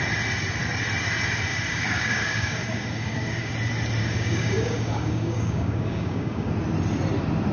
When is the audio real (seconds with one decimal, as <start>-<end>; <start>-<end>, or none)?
0.0-1.5; 3.5-4.0; 6.5-7.5